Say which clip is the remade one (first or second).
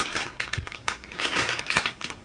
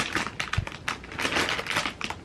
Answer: first